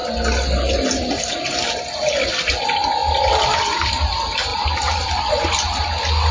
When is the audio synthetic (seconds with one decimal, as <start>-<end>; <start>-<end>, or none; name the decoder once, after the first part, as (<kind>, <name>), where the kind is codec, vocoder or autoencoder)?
none